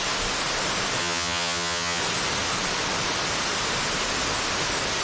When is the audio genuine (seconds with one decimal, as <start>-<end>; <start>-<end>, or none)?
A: 0.0-1.0; 2.0-5.0